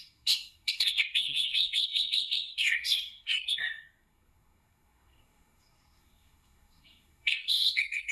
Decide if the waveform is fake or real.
fake